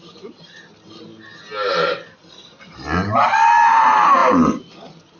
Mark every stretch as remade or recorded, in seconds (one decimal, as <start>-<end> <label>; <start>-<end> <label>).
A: 0.0-5.2 recorded